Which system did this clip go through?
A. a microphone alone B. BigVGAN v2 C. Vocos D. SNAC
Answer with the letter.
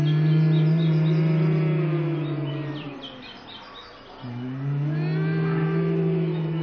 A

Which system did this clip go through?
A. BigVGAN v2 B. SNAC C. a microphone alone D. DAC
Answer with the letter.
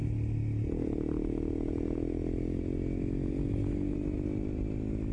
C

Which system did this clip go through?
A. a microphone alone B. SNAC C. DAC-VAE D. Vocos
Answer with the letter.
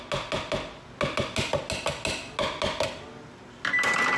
A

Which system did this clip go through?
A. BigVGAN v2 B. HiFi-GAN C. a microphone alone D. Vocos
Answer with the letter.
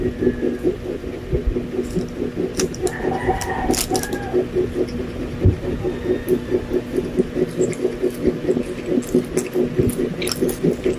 C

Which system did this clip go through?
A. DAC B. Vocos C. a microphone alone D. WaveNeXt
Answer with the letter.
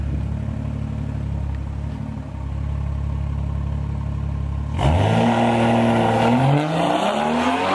C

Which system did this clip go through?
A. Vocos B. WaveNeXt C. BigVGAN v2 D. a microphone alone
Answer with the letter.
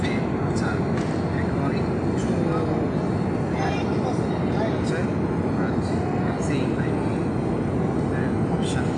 D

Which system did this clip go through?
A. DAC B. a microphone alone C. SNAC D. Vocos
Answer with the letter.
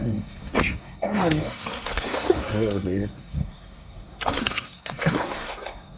C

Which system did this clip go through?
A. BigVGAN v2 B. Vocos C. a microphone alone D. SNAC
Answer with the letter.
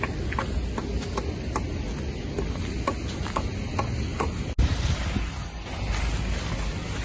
C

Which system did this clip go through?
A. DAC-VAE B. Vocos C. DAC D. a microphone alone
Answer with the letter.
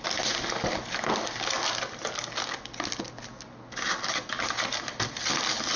D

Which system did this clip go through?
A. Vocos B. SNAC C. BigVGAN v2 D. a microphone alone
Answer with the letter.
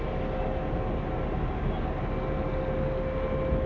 D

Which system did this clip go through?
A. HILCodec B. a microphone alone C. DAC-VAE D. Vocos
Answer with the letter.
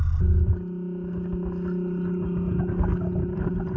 B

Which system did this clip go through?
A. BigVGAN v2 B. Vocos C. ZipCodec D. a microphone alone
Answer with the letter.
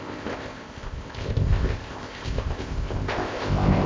C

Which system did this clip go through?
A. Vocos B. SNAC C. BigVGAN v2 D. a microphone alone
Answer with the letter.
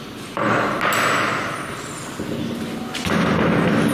D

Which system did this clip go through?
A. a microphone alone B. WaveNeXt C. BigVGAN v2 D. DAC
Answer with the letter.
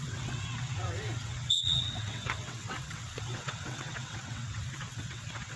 B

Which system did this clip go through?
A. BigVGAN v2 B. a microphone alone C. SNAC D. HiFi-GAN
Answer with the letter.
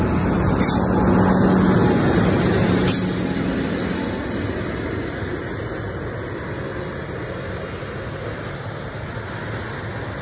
B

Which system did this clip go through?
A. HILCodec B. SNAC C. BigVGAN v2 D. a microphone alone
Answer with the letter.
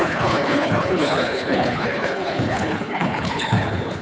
A